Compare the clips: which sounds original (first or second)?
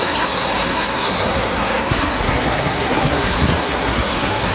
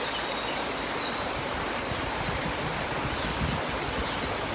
second